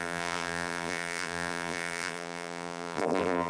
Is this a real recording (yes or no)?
no